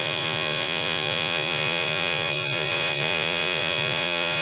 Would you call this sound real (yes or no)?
no